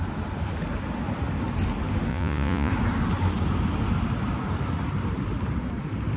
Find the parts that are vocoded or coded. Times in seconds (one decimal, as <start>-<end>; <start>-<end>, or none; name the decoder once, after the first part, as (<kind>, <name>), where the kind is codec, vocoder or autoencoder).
2.1-2.7 (vocoder, Vocos)